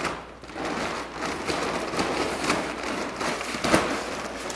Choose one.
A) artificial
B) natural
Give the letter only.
B